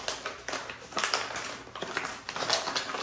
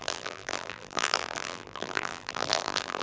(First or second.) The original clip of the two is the first